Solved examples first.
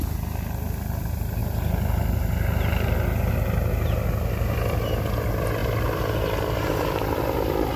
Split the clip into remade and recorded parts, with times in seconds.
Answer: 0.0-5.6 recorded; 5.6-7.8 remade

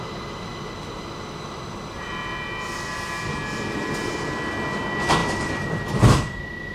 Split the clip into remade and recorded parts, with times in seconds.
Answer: 0.0-5.2 recorded; 5.2-5.8 remade; 5.8-6.7 recorded

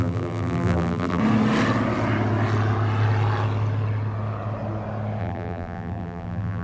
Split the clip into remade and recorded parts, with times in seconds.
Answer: 0.0-1.2 remade; 1.2-5.2 recorded; 5.2-6.6 remade